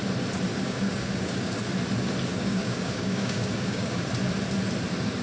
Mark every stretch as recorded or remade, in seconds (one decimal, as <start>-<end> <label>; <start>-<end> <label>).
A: 0.0-0.5 recorded; 0.5-1.5 remade; 1.5-2.3 recorded; 2.3-4.1 remade; 4.1-5.2 recorded